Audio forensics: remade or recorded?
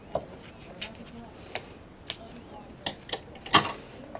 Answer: recorded